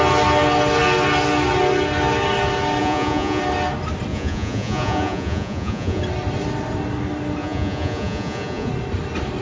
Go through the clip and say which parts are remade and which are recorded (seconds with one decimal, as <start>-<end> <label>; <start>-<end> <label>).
0.0-2.8 recorded; 2.8-3.4 remade; 3.4-4.1 recorded; 4.1-6.0 remade; 6.0-7.4 recorded; 7.4-8.7 remade; 8.7-9.4 recorded